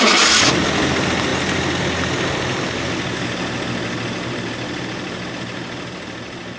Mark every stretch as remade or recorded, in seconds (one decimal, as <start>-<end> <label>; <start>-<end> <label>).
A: 0.0-6.6 recorded